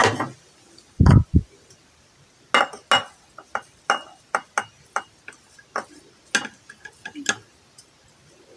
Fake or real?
real